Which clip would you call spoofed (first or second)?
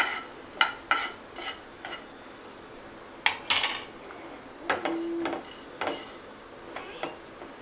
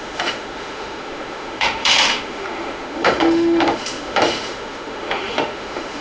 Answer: second